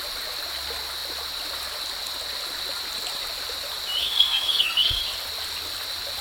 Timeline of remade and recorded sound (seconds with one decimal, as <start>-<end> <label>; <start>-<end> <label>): 0.0-4.0 recorded; 4.0-5.0 remade; 5.0-6.2 recorded